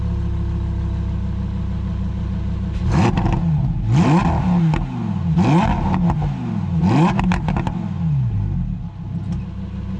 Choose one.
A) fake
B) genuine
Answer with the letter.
B